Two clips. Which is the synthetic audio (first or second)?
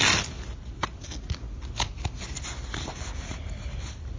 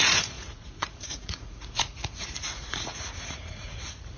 second